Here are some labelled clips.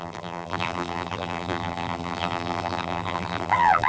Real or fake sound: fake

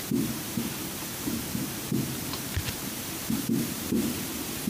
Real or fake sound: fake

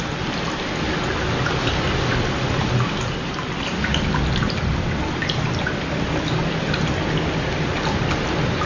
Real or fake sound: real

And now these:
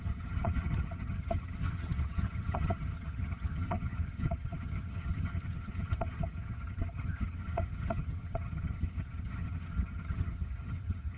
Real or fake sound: fake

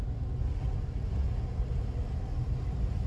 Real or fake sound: real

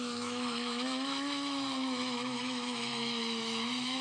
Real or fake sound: fake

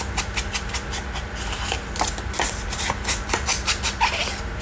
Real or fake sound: real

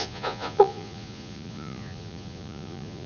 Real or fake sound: fake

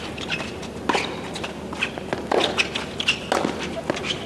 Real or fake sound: real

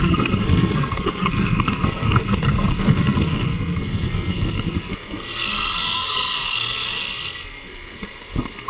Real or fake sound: fake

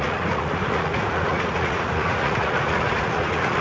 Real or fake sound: fake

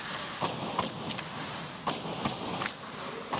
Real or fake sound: real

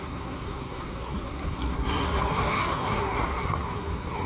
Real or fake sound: fake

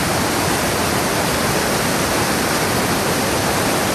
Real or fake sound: real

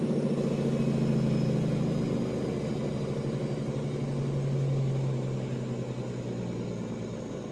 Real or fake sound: real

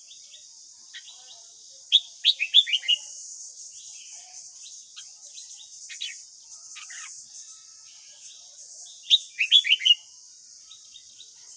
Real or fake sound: real